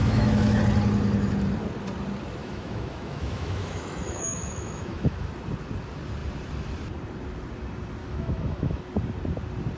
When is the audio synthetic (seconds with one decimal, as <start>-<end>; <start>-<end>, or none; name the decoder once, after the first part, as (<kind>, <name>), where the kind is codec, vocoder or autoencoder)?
0.0-0.6 (autoencoder, DAC-VAE); 2.4-5.3; 8.0-8.8